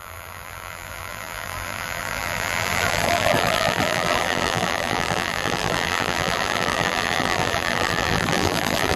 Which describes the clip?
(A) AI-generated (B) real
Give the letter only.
A